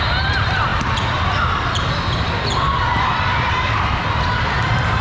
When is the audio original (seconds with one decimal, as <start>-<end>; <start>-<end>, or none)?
0.0-5.0